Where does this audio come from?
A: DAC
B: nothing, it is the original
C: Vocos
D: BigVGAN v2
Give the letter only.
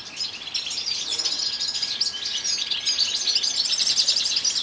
B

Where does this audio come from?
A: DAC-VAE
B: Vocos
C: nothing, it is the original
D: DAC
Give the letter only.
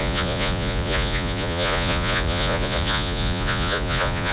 B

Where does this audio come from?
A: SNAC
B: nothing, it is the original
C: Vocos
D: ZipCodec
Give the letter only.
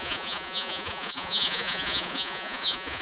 C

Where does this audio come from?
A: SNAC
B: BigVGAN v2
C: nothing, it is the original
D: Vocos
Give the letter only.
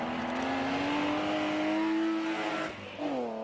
C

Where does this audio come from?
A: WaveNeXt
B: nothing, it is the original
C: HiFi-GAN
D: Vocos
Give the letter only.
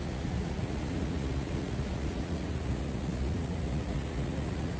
D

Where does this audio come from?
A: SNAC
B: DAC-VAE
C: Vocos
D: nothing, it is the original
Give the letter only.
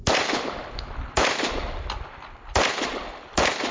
D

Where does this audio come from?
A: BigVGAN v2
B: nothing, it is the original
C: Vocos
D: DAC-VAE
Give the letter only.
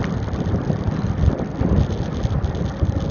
B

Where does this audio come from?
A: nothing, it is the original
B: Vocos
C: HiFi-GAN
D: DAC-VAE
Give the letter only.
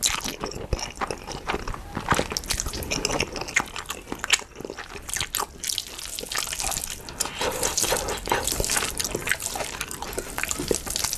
A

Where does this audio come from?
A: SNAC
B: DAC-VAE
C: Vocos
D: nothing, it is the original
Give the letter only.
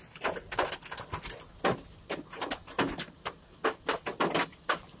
D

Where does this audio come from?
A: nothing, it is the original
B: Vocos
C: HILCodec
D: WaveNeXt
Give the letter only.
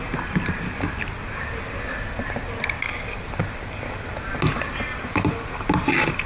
A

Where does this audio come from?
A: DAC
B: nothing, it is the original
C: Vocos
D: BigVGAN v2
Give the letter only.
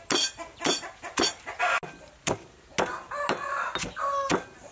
B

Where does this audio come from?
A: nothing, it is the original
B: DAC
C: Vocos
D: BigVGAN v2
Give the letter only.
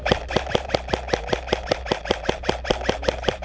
A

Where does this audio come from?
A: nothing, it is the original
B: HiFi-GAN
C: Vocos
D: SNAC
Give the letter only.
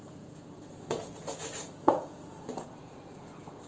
C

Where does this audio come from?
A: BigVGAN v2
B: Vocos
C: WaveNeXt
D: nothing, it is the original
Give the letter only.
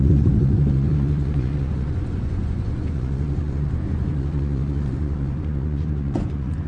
B